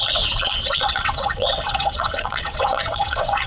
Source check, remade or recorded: remade